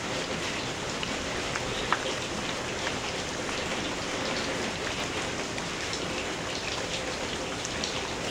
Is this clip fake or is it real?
real